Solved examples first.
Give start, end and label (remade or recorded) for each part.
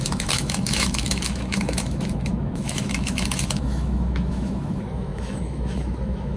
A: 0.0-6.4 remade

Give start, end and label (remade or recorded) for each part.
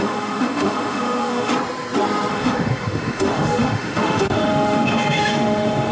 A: 0.0-1.5 remade; 1.5-2.3 recorded; 2.3-5.9 remade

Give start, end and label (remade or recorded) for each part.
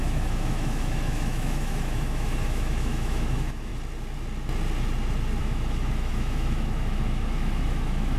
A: 0.0-3.7 remade; 3.7-5.4 recorded; 5.4-8.2 remade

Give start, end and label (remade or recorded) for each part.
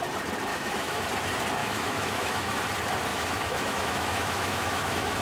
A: 0.0-0.5 recorded; 0.5-1.0 remade; 1.0-1.6 recorded; 1.6-2.6 remade; 2.6-3.1 recorded; 3.1-5.2 remade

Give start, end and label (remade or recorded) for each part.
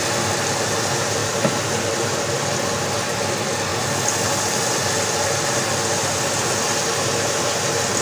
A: 0.0-8.0 recorded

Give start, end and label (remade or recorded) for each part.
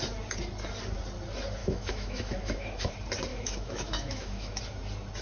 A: 0.0-1.6 recorded; 1.6-2.9 remade; 2.9-3.3 recorded; 3.3-4.6 remade; 4.6-5.2 recorded